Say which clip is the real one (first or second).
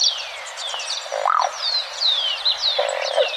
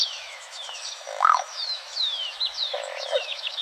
first